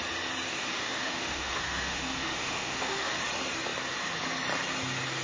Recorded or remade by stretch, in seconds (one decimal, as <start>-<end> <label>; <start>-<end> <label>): 0.0-0.5 recorded; 0.5-3.2 remade; 3.2-5.2 recorded